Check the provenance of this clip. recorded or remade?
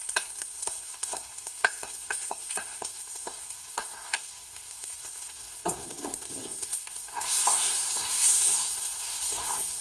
remade